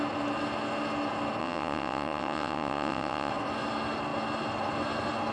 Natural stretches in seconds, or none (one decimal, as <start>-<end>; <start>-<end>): 0.0-1.4; 3.3-5.3